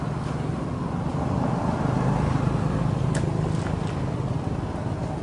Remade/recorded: recorded